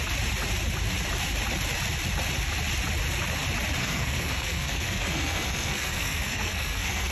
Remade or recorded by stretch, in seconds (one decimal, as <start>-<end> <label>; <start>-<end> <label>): 0.0-3.8 recorded; 3.8-7.1 remade